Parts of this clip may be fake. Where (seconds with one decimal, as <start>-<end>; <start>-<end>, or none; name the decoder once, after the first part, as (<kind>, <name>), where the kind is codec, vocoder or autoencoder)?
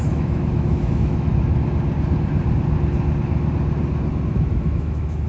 0.0-1.3 (autoencoder, DAC-VAE); 4.3-5.3